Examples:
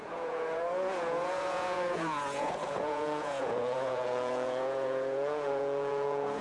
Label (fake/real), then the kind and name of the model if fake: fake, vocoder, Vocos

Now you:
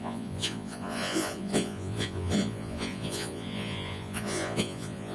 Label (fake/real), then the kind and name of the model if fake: fake, vocoder, Vocos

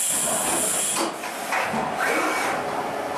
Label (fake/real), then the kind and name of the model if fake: real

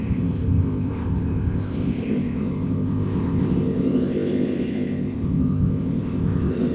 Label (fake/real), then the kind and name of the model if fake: fake, codec, ZipCodec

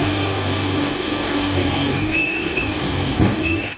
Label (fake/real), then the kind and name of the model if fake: fake, codec, DAC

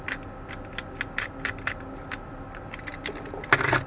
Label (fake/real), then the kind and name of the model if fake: real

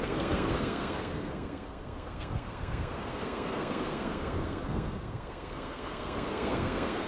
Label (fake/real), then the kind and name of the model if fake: fake, codec, SNAC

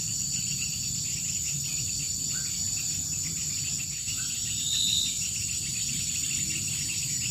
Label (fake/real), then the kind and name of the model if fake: fake, vocoder, BigVGAN v2